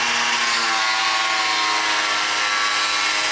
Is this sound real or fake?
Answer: real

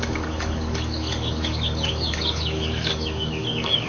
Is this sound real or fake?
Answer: fake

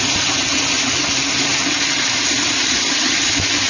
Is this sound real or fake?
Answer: real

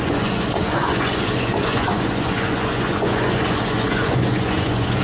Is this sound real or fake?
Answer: fake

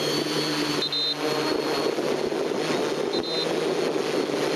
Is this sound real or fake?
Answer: real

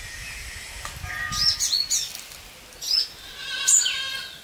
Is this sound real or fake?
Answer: real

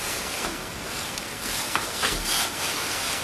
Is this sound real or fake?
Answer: fake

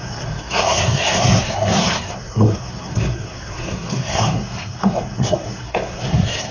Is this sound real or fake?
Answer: fake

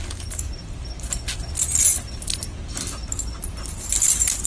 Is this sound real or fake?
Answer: real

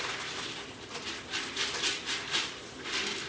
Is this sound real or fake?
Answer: real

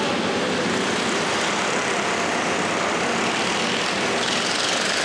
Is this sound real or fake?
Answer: real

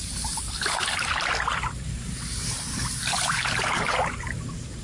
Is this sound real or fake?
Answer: fake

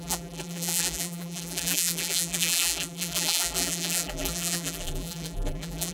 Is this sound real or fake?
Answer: fake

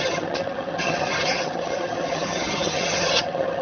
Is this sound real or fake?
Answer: fake